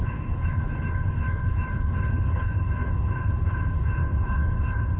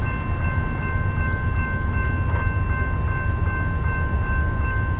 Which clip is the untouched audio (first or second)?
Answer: second